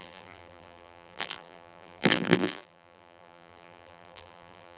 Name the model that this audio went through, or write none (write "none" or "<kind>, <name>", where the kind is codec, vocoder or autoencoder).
vocoder, BigVGAN v2